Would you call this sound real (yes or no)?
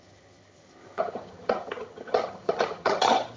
no